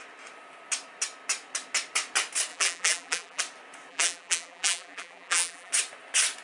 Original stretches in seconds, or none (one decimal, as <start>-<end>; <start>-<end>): 0.0-2.5; 3.4-3.9; 5.7-6.4